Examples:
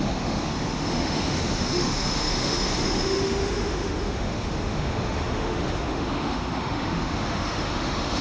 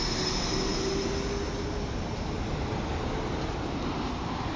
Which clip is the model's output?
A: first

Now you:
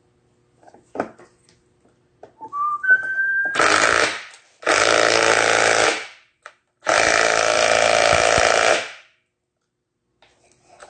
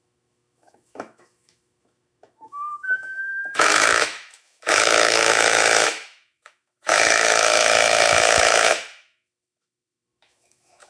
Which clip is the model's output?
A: second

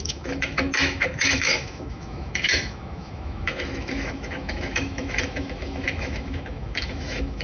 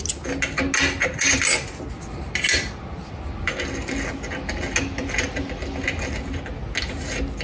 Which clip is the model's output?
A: first